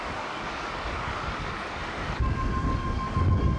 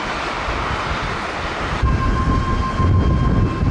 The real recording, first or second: second